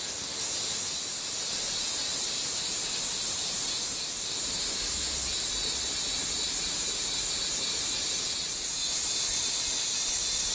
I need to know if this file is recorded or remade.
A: recorded